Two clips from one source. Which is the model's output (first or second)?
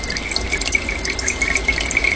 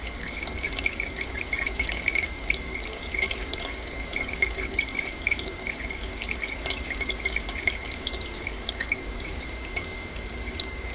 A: second